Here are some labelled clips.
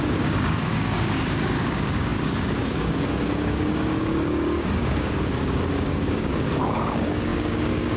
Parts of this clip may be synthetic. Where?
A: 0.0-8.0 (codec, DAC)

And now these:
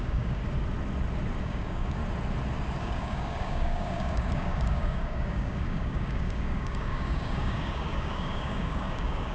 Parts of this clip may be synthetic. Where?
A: 0.0-0.4 (codec, DAC); 1.4-2.0; 2.8-9.3

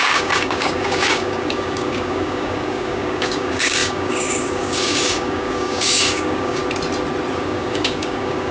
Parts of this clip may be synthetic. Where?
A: 0.0-6.6 (codec, DAC); 7.3-8.5

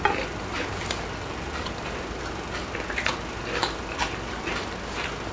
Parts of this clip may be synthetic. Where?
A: none

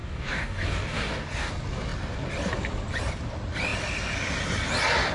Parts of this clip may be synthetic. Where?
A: 0.0-1.5 (codec, DAC)

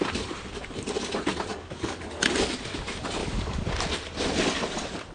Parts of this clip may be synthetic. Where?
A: 1.5-2.2 (codec, DAC); 3.2-3.7

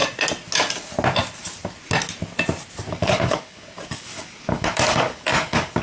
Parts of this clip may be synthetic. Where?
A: 2.9-5.8 (codec, DAC)